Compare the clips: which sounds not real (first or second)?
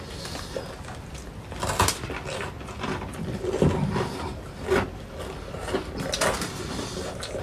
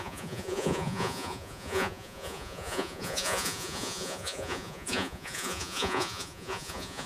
second